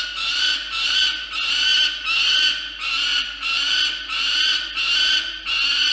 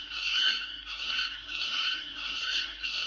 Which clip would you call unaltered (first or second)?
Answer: first